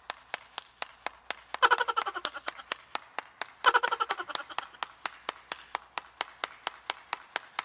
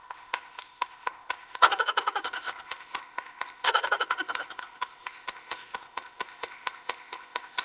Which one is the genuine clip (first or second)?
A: first